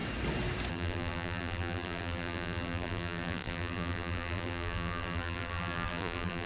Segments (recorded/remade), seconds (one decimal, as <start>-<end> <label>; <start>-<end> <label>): 0.0-0.7 recorded; 0.7-6.5 remade